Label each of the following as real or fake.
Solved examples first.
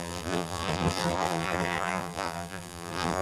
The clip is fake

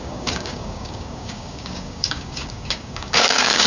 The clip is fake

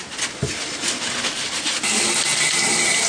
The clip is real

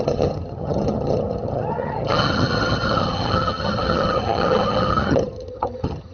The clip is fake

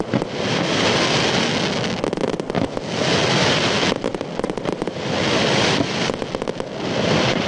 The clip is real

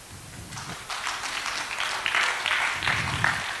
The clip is real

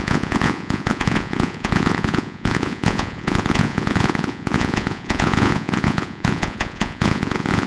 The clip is fake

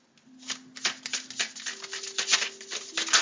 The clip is real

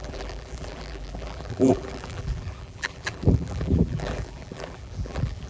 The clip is fake